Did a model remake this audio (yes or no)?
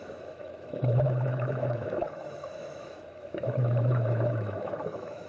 yes